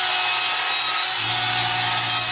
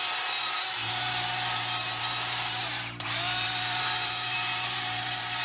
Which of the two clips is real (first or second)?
first